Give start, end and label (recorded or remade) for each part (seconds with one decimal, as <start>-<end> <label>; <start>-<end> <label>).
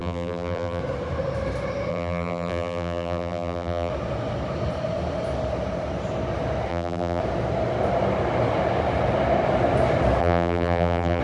0.0-0.8 remade; 0.8-1.9 recorded; 1.9-3.9 remade; 3.9-6.7 recorded; 6.7-7.2 remade; 7.2-10.2 recorded; 10.2-11.2 remade